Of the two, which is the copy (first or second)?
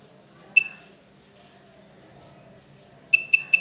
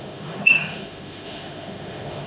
second